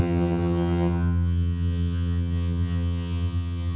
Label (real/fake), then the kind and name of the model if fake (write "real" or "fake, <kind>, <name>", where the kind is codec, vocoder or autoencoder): fake, vocoder, HiFi-GAN